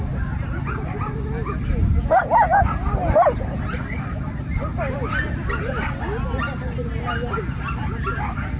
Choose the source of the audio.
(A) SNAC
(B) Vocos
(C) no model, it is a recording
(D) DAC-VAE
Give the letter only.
C